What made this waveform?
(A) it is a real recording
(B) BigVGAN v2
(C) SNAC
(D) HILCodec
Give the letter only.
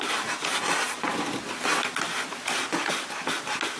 A